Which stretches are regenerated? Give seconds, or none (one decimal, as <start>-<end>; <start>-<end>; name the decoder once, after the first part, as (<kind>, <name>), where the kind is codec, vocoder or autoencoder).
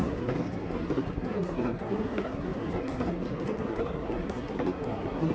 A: 0.0-5.3 (codec, SNAC)